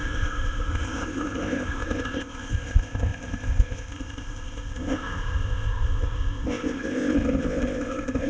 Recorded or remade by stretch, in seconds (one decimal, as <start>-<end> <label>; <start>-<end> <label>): 0.0-8.3 remade